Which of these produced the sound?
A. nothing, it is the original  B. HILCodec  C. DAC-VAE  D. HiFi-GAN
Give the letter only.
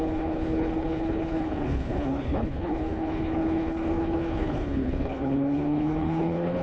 B